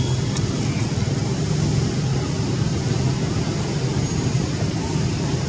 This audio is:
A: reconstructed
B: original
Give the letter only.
B